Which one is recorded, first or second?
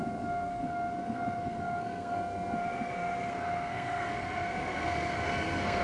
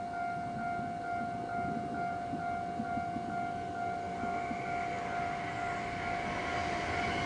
second